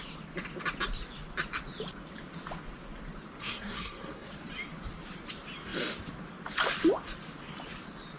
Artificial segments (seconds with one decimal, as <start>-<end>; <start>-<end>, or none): 3.4-4.3